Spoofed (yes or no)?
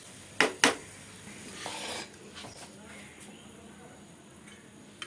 no